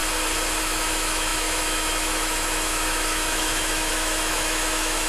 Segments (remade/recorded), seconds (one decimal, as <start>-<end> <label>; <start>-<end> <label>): 0.0-0.6 recorded; 0.6-5.1 remade